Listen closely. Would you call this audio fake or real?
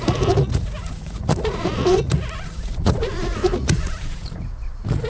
fake